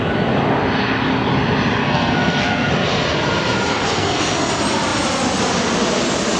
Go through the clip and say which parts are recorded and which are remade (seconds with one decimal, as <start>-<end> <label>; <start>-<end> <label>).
0.0-1.8 recorded; 1.8-2.7 remade; 2.7-3.7 recorded; 3.7-4.5 remade; 4.5-6.4 recorded